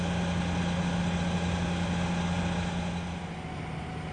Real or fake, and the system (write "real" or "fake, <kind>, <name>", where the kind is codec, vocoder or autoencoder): real